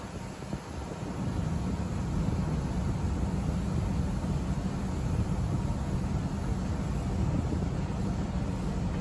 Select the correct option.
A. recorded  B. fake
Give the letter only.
A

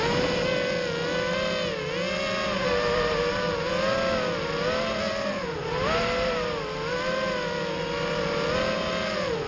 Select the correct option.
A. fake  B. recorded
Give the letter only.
B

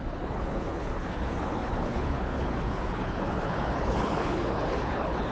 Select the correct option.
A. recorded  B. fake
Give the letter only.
B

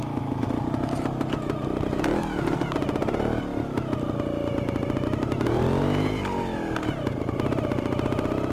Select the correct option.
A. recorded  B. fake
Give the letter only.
A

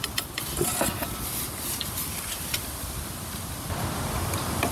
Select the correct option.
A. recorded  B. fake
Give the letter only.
A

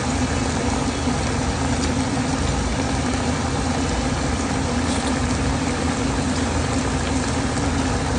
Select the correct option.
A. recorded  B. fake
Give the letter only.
A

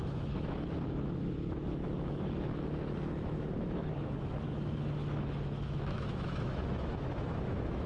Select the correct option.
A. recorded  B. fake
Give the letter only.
B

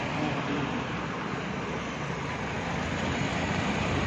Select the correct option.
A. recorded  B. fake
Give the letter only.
A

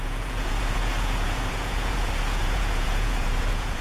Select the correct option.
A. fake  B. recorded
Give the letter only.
A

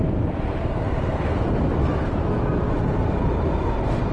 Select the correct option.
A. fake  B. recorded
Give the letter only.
B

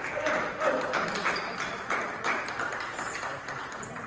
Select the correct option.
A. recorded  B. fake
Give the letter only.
A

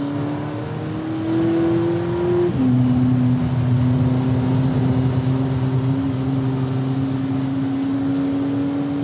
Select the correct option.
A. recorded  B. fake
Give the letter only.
A